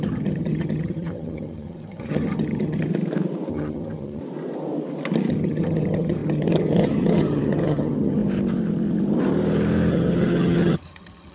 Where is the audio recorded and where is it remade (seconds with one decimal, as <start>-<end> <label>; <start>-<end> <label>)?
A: 0.0-2.9 remade; 2.9-3.5 recorded; 3.5-4.2 remade; 4.2-5.3 recorded; 5.3-8.2 remade; 8.2-9.9 recorded; 9.9-11.3 remade